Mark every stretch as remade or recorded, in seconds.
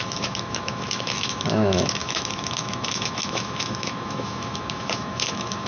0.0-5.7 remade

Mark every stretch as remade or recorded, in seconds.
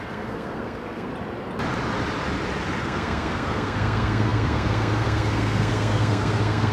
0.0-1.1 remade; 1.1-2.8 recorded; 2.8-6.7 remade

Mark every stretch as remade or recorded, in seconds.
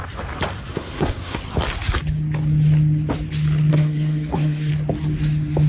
0.0-0.7 recorded; 0.7-1.4 remade; 1.4-3.7 recorded; 3.7-4.7 remade; 4.7-5.7 recorded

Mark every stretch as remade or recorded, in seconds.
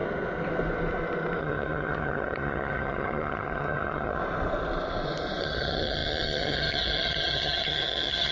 0.0-1.4 recorded; 1.4-4.2 remade; 4.2-5.4 recorded; 5.4-8.3 remade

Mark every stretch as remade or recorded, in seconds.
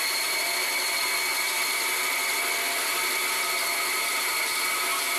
0.0-5.2 recorded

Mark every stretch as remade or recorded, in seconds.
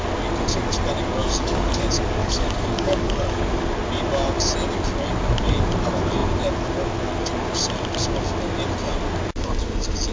0.0-1.2 recorded; 1.2-1.8 remade; 1.8-2.2 recorded; 2.2-3.4 remade; 3.4-10.1 recorded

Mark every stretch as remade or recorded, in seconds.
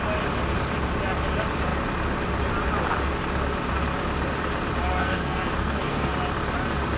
0.0-5.0 recorded; 5.0-6.1 remade; 6.1-7.0 recorded